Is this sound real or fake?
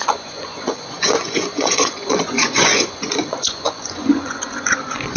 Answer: fake